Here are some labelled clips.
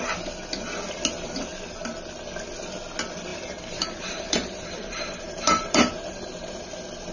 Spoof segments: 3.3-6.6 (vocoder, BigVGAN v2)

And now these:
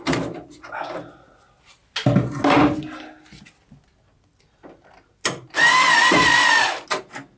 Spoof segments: none